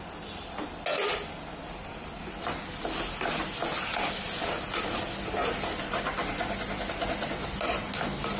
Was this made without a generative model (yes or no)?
yes